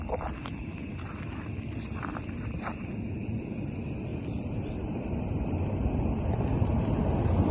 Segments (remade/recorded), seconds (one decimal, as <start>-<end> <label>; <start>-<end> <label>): 0.0-2.9 remade; 2.9-4.1 recorded; 4.1-6.8 remade; 6.8-7.5 recorded